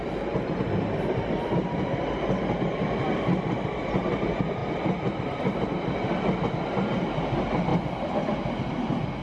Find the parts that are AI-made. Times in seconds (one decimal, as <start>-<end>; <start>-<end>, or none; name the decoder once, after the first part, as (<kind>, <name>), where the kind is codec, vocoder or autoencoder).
none